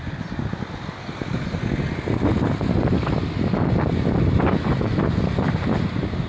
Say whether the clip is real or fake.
real